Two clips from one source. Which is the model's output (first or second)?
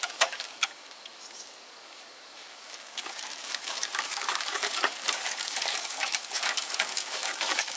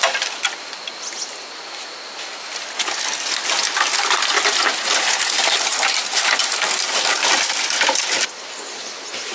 first